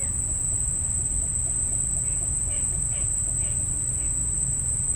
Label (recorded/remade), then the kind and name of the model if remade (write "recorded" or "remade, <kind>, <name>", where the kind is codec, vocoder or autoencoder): recorded